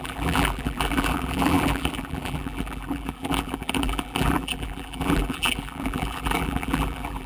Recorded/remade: remade